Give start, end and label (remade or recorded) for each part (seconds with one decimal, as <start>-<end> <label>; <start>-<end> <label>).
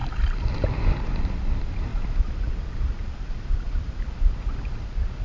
0.0-1.9 remade; 1.9-2.5 recorded; 2.5-5.2 remade